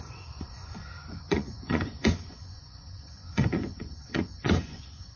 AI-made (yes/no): yes